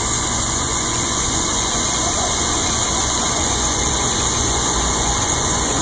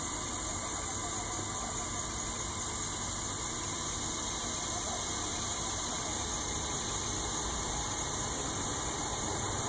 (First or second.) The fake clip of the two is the first